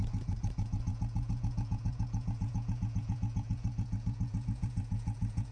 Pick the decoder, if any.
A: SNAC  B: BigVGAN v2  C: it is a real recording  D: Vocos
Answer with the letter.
D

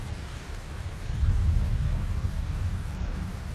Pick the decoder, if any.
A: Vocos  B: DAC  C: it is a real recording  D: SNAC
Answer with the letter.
B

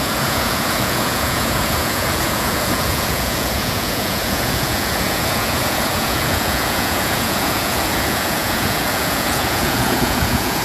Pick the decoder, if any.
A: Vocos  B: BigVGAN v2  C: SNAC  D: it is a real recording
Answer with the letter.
A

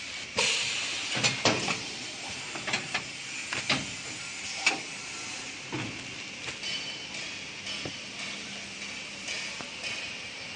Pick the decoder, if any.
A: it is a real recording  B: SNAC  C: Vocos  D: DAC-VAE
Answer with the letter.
A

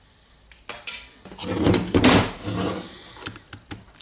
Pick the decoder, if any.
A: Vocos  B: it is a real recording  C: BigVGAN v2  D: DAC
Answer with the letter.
B